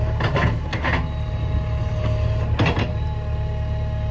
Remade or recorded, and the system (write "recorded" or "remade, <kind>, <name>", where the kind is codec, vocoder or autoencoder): recorded